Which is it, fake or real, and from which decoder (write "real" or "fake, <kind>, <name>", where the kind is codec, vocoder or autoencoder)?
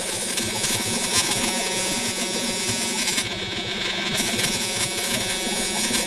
fake, vocoder, Vocos